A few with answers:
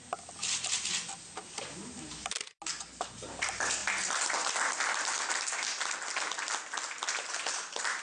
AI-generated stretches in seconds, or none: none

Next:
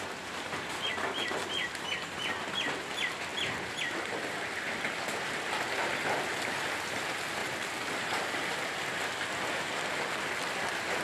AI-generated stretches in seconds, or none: 0.0-3.3 (vocoder, BigVGAN v2); 3.8-7.4